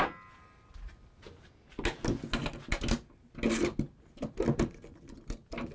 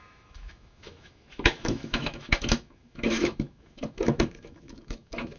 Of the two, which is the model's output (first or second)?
second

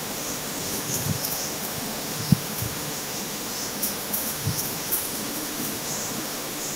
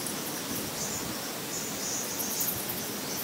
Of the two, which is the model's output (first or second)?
first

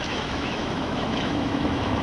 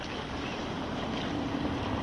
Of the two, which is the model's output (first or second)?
first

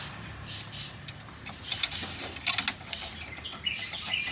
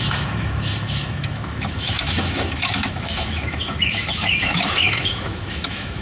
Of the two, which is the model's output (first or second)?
second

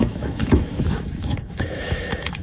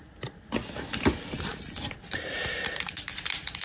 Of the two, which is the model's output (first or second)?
first